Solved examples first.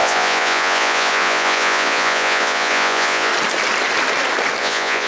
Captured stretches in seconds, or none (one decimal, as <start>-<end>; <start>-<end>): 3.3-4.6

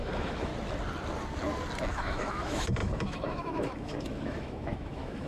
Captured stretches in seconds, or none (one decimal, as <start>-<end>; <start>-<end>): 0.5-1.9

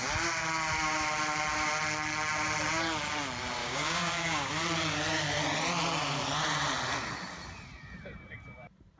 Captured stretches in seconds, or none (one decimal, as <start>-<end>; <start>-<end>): 0.0-3.6; 4.5-9.0

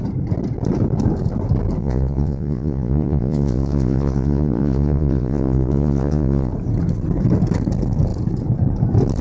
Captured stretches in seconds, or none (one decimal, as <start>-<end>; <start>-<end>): 0.0-1.8; 6.5-9.2

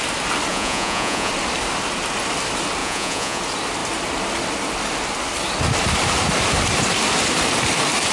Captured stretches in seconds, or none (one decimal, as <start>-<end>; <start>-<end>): 0.0-0.5; 1.3-2.8; 3.4-8.1

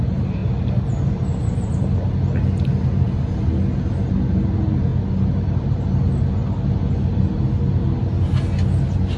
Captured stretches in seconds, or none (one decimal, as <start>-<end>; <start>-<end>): 0.0-9.2

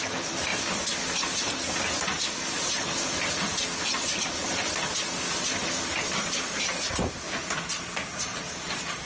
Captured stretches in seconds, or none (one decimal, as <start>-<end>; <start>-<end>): 0.0-9.1